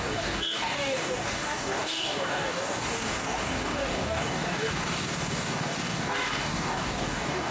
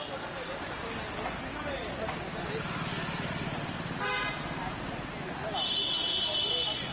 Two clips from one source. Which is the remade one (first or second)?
first